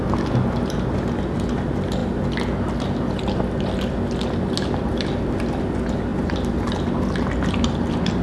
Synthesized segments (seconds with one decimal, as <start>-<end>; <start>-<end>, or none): none